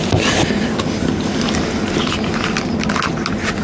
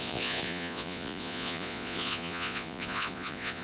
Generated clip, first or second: second